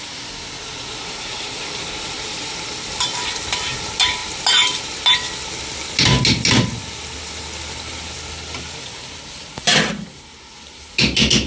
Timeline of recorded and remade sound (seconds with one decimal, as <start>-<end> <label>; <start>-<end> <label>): 0.0-11.5 recorded